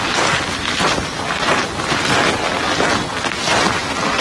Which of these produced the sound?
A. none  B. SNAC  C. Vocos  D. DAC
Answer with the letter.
A